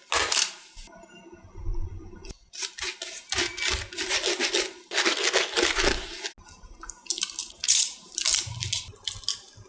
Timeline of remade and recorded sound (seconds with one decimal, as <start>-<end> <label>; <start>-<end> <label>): 0.0-7.4 recorded; 7.4-8.1 remade; 8.1-9.7 recorded